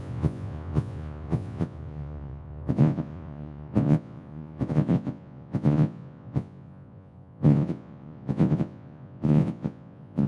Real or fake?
fake